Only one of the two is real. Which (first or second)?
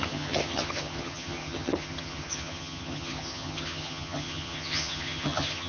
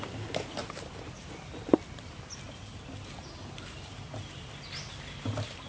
second